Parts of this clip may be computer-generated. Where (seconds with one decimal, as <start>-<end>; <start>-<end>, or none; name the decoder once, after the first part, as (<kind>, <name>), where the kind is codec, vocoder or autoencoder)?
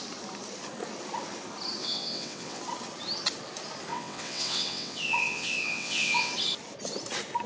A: 1.8-2.6 (vocoder, WaveNeXt); 3.9-6.3